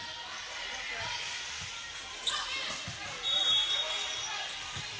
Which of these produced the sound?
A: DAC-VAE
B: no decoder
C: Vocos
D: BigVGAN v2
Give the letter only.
B